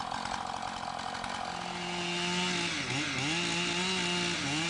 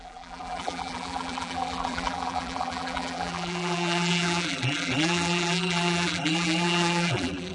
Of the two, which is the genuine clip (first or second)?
first